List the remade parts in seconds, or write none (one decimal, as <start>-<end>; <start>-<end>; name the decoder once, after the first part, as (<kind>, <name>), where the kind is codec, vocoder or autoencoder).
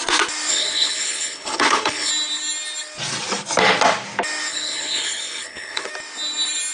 0.5-2.1 (codec, HILCodec); 4.5-5.9